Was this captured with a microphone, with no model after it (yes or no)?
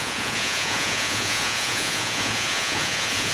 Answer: no